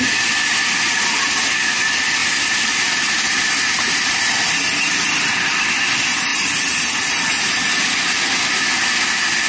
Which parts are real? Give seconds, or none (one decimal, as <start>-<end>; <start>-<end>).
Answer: 0.0-2.2; 4.5-6.3; 7.6-9.5